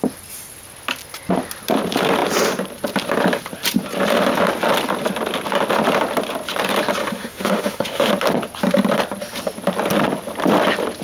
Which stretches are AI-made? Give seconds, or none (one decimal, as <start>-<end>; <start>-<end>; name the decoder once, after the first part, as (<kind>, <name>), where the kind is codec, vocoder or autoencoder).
7.0-8.1 (autoencoder, DAC-VAE)